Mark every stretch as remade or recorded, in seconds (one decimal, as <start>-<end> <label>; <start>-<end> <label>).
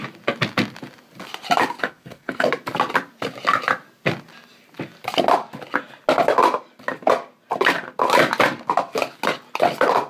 0.0-1.8 recorded; 1.8-2.5 remade; 2.5-10.1 recorded